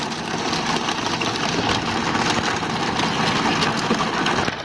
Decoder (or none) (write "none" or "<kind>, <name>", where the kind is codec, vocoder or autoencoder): none